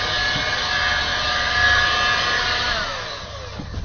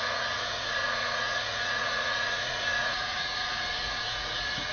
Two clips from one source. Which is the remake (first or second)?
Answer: second